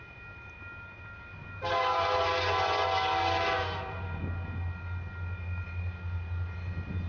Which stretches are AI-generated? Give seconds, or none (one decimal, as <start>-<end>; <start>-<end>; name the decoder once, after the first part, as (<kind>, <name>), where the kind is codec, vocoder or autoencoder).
none